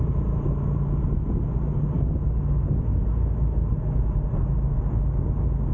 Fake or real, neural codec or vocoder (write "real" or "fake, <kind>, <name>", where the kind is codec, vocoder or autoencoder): real